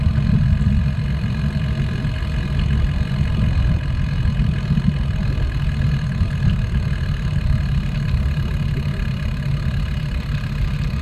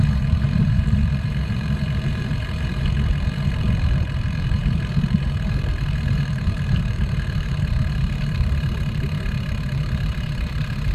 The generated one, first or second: second